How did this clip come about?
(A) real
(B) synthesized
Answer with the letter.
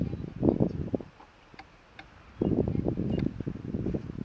A